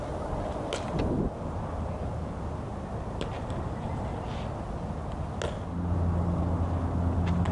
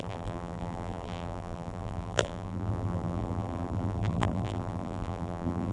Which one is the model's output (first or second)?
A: second